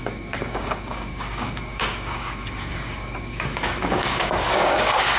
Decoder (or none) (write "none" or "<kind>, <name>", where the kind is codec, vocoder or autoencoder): codec, DAC